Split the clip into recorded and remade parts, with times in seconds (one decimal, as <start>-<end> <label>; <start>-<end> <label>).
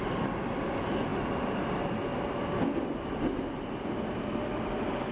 0.0-5.1 recorded